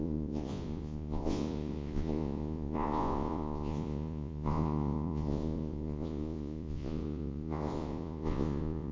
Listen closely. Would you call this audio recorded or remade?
remade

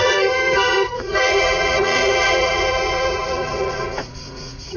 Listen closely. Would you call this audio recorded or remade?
remade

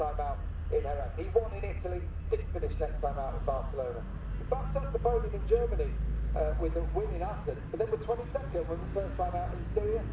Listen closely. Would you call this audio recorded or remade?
recorded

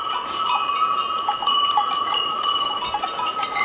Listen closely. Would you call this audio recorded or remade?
remade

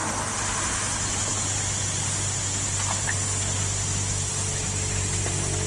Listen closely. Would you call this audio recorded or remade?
recorded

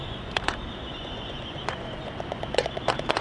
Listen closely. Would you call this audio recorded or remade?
remade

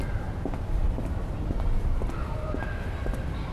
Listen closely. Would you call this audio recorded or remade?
recorded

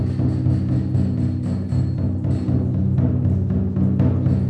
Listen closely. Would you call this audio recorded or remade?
recorded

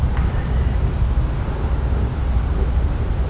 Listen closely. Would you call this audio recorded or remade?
recorded